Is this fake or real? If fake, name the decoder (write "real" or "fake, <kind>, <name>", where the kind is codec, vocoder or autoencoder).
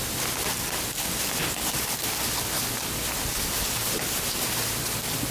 real